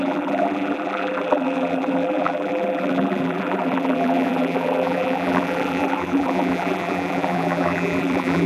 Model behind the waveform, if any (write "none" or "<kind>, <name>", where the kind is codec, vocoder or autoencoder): vocoder, BigVGAN v2